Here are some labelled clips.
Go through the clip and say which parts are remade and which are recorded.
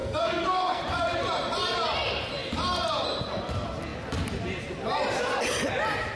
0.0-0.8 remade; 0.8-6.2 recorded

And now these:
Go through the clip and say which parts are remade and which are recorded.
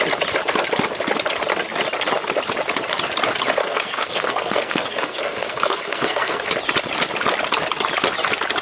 0.0-3.6 recorded; 3.6-6.5 remade; 6.5-8.6 recorded